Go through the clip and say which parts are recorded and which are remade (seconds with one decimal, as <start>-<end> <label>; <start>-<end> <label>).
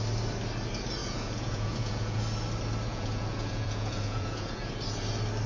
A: 0.0-1.0 recorded; 1.0-2.2 remade; 2.2-2.9 recorded; 2.9-4.7 remade; 4.7-5.5 recorded